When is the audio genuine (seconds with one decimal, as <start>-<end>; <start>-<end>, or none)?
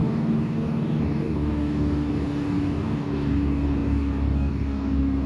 none